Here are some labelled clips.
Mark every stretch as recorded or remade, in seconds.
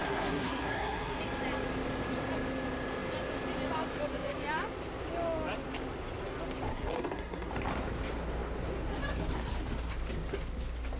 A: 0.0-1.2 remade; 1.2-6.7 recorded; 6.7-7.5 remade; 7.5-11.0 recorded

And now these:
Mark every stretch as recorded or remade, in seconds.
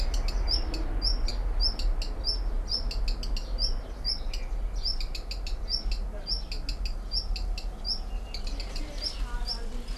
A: 0.0-10.0 recorded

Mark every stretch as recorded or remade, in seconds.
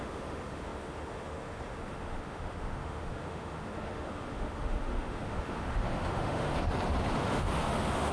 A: 0.0-6.6 remade; 6.6-7.1 recorded; 7.1-8.1 remade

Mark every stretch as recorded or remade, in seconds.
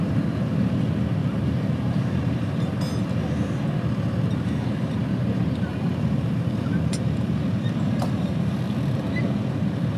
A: 0.0-1.2 recorded; 1.2-2.8 remade; 2.8-5.7 recorded; 5.7-8.3 remade; 8.3-10.0 recorded